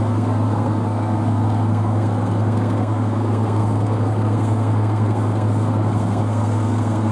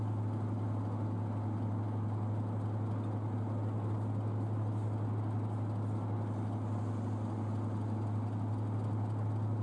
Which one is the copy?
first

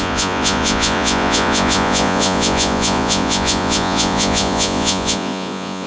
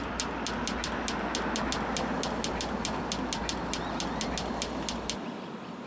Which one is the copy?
first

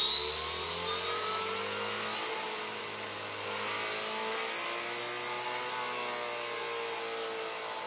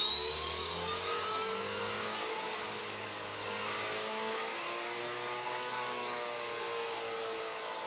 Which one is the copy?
second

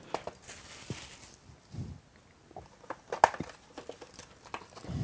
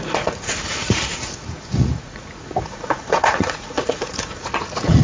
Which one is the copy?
second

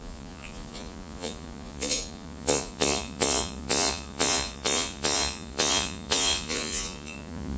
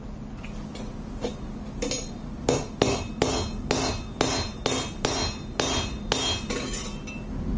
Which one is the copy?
first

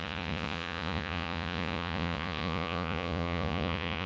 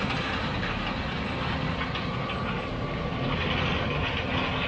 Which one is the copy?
first